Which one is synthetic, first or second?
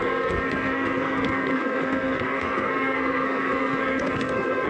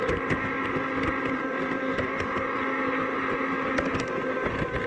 first